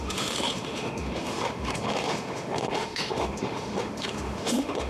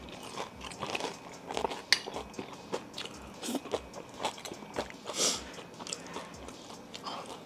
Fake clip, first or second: first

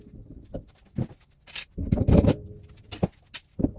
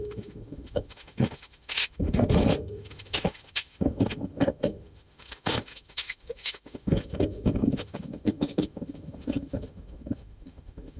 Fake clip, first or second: second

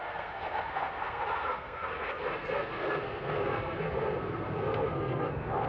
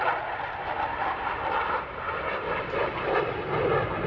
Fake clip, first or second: first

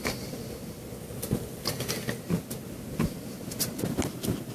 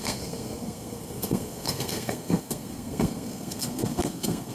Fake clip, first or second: second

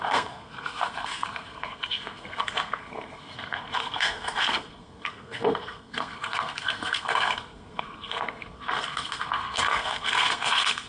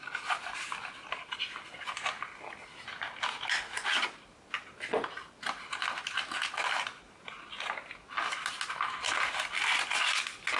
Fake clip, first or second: first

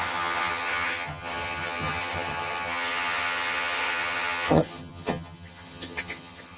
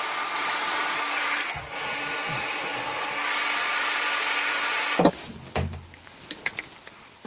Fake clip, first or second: first